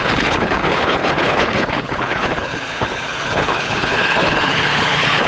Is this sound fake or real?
fake